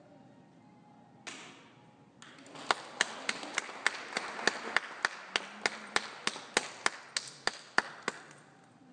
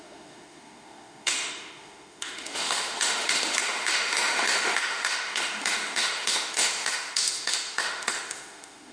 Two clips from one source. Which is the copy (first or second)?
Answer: second